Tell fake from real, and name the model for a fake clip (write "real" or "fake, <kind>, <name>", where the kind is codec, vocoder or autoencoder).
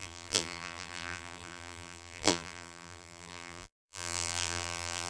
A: fake, vocoder, BigVGAN v2